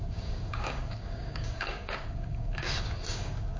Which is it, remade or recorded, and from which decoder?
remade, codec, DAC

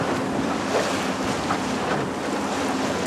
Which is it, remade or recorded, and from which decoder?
recorded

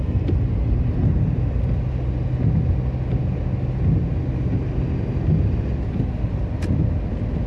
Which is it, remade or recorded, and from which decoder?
recorded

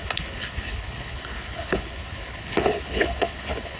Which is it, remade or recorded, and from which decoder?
remade, codec, HILCodec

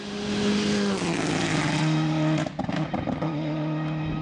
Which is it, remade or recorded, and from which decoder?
recorded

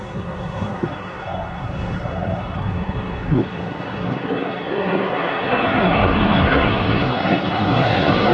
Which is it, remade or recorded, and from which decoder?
remade, codec, SNAC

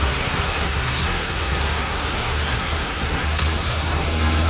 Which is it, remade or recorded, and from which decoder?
remade, codec, SNAC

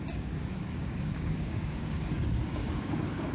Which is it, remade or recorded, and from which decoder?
remade, codec, DAC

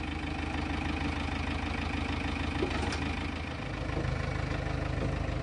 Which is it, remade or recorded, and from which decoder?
recorded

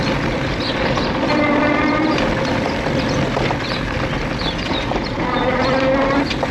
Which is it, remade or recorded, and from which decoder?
recorded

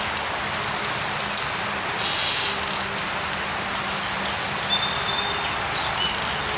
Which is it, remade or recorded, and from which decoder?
recorded